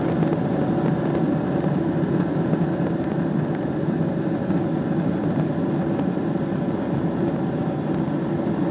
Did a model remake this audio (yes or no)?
no